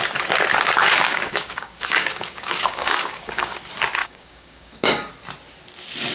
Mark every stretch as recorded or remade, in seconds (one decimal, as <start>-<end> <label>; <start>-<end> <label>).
0.0-0.8 recorded; 0.8-3.6 remade; 3.6-4.0 recorded; 4.0-5.1 remade; 5.1-6.1 recorded